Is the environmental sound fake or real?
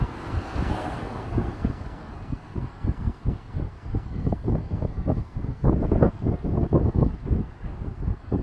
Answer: fake